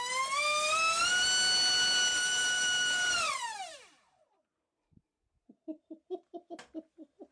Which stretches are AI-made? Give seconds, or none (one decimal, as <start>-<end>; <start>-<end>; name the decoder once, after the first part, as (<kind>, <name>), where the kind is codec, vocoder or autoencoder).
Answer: 2.1-6.5 (vocoder, BigVGAN v2)